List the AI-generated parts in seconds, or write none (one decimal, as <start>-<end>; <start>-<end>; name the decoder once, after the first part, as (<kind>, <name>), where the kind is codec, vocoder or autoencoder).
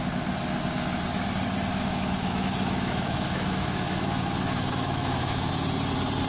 1.7-5.5 (autoencoder, DAC-VAE)